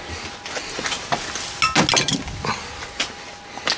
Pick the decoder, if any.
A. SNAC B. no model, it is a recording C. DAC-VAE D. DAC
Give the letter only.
B